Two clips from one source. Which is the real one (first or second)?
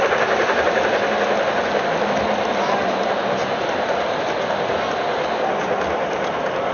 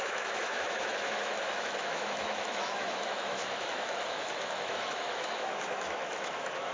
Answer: first